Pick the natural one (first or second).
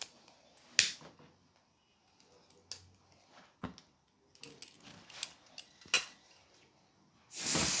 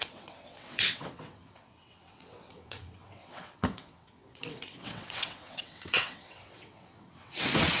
first